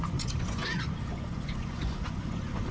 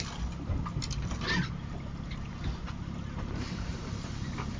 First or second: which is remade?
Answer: first